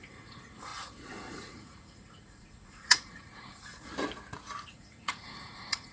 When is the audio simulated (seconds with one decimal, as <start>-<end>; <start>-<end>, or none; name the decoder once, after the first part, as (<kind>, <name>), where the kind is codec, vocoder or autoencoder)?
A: 0.0-3.9 (vocoder, Vocos); 4.7-5.9